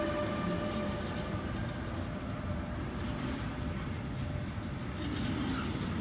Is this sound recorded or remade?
recorded